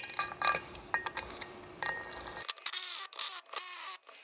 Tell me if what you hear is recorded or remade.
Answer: recorded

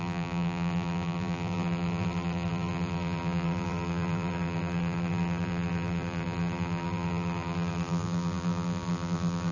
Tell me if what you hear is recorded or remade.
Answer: remade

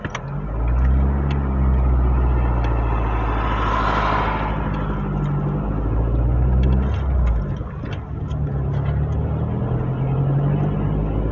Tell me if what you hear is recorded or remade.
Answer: recorded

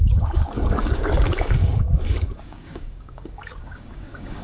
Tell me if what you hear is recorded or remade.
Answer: remade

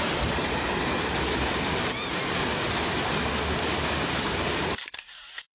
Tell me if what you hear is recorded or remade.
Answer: remade